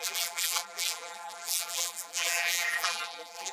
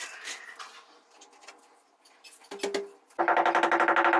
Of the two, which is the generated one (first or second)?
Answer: first